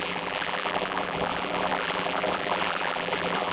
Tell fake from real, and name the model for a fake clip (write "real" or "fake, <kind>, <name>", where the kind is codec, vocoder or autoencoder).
fake, vocoder, BigVGAN v2